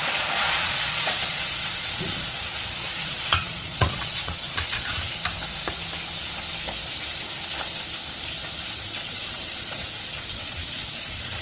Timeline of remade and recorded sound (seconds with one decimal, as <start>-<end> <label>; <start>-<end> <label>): 0.0-5.2 remade; 5.2-8.7 recorded; 8.7-11.4 remade